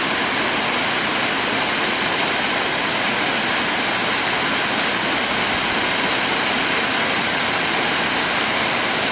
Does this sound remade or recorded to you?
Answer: recorded